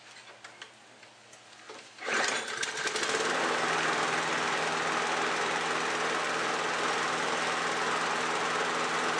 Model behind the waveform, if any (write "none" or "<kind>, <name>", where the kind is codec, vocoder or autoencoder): none